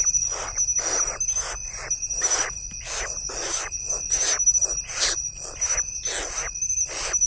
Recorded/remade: recorded